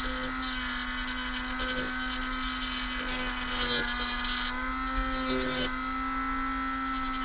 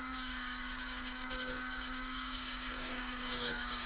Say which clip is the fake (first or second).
second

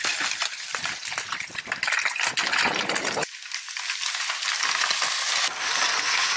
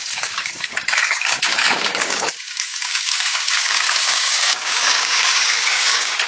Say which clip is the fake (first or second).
second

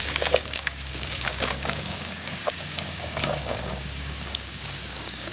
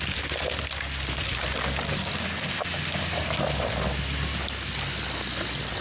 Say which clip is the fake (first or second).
first